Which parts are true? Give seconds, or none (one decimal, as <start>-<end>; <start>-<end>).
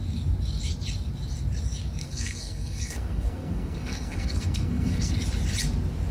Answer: 0.0-2.0; 5.1-6.1